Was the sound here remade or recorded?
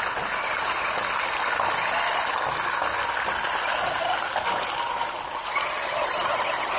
recorded